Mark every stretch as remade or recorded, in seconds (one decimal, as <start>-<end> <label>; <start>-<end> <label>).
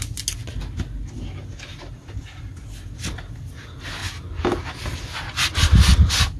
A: 0.0-6.4 recorded